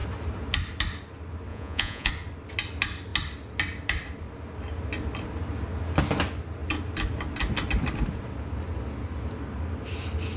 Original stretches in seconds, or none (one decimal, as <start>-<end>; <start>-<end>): 0.0-1.5; 2.1-10.4